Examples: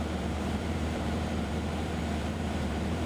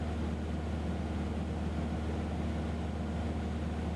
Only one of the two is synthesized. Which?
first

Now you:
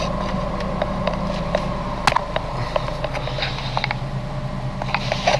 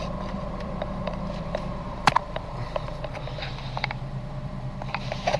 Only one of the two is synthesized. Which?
second